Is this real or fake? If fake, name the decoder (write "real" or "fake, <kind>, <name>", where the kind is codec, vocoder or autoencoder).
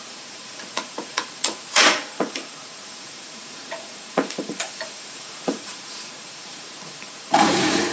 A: fake, vocoder, Vocos